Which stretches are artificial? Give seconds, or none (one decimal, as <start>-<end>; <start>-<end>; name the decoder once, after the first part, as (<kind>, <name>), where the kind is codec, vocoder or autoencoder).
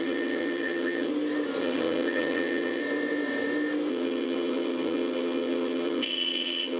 0.0-1.1 (vocoder, HiFi-GAN); 1.6-2.8; 3.9-6.8